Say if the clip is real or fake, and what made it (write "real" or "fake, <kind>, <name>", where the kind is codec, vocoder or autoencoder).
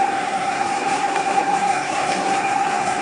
fake, codec, SNAC